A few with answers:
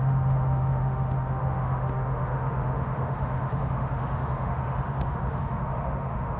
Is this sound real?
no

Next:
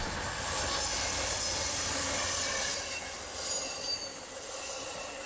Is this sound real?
yes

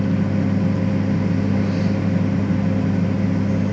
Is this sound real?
yes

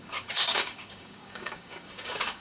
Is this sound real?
no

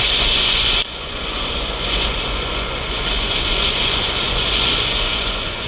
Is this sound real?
no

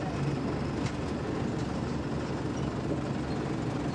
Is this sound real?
yes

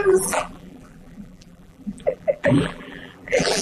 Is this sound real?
no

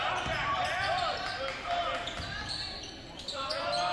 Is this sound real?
yes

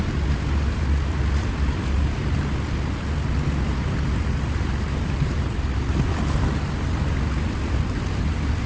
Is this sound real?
no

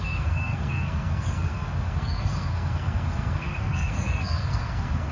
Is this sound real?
no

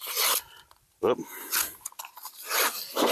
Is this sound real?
yes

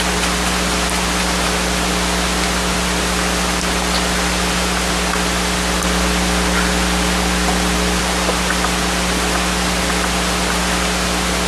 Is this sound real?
yes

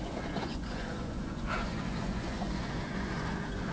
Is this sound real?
no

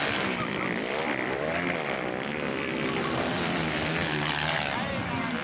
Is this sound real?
yes